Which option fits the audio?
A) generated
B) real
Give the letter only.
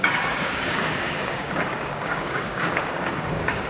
A